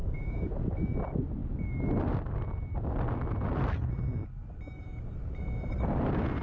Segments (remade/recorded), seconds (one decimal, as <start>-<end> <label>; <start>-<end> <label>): 0.0-0.5 remade; 0.5-6.4 recorded